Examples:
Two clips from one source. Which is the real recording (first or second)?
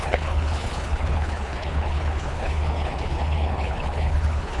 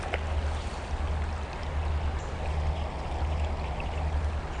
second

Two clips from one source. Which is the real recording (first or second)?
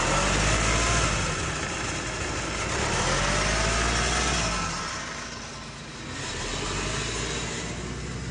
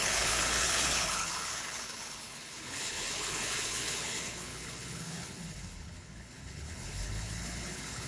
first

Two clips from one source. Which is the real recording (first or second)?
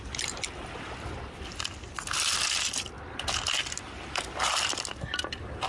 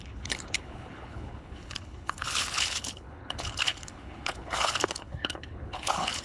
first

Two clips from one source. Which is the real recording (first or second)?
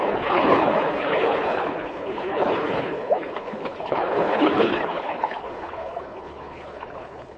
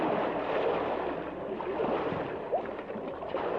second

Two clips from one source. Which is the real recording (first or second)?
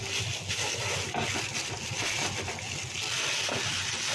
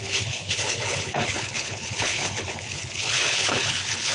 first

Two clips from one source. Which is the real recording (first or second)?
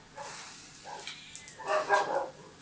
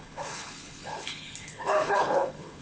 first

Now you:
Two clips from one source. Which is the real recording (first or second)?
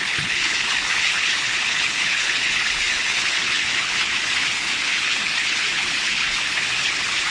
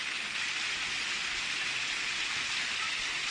second